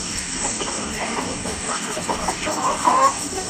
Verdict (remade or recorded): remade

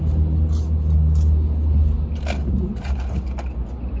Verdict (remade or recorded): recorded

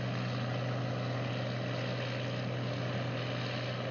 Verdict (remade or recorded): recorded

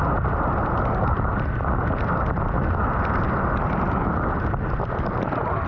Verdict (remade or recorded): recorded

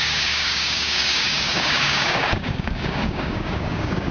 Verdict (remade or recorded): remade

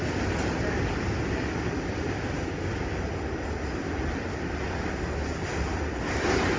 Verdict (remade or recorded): recorded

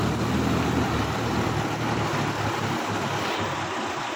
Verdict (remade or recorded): recorded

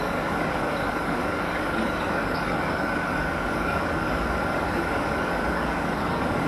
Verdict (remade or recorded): remade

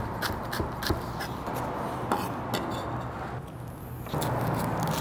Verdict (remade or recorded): recorded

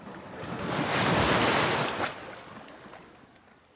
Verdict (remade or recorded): recorded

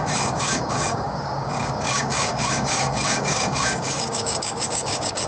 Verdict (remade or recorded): remade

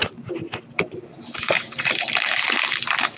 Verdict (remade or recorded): recorded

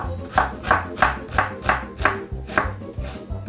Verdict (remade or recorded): recorded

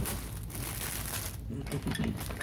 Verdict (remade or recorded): recorded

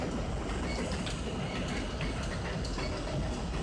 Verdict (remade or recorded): recorded